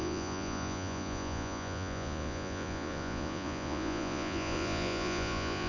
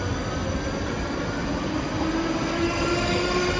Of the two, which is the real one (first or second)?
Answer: second